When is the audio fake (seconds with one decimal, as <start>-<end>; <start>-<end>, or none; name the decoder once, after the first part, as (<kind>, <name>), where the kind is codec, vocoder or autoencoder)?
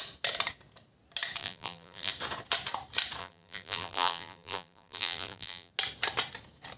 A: 1.4-2.1 (vocoder, BigVGAN v2); 3.2-5.7